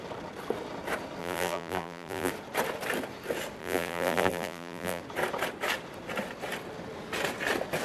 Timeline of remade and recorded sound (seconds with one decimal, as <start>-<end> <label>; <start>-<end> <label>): 0.0-1.2 recorded; 1.2-2.3 remade; 2.3-3.6 recorded; 3.6-5.0 remade; 5.0-7.8 recorded